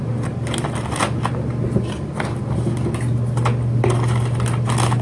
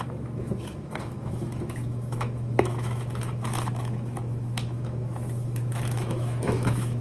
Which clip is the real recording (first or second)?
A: first